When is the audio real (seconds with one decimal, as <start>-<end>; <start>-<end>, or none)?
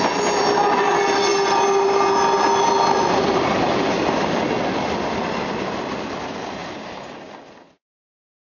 0.0-8.5